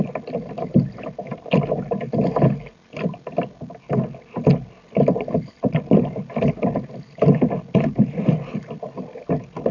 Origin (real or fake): real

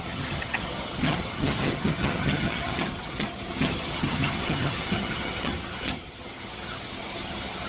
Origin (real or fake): fake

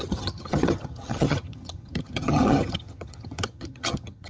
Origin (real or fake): fake